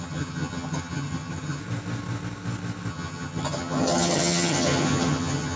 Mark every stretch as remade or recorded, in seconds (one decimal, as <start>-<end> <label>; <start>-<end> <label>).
0.0-1.6 remade; 1.6-2.9 recorded; 2.9-5.6 remade

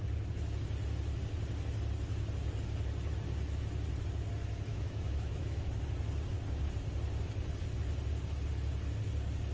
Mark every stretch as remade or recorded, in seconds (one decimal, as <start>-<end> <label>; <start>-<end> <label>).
0.0-4.7 recorded; 4.7-5.8 remade; 5.8-9.5 recorded

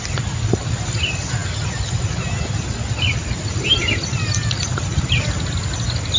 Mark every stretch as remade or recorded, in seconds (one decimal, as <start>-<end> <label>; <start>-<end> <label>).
0.0-6.2 recorded

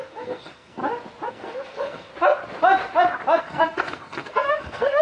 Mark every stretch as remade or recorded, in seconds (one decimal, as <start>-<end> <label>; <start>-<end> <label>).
0.0-0.8 remade; 0.8-1.3 recorded; 1.3-2.1 remade; 2.1-3.4 recorded; 3.4-5.0 remade

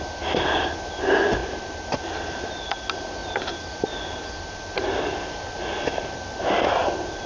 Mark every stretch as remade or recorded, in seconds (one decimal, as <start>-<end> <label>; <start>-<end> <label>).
0.0-1.4 recorded; 1.4-2.0 remade; 2.0-3.2 recorded; 3.2-4.6 remade; 4.6-7.3 recorded

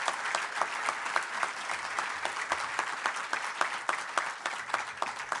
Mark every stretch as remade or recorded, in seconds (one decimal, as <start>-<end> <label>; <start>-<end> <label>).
0.0-5.4 recorded

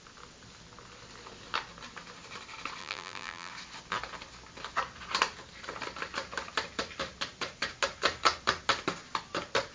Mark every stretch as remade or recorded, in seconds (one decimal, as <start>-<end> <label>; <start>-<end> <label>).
0.0-2.8 recorded; 2.8-3.5 remade; 3.5-9.7 recorded

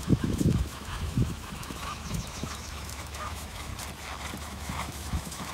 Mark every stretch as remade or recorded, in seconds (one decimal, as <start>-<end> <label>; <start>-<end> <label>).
0.0-3.7 remade; 3.7-4.4 recorded; 4.4-5.5 remade